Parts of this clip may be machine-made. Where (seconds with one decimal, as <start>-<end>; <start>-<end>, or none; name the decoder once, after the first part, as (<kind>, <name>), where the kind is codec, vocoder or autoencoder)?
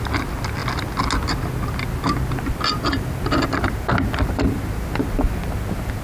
none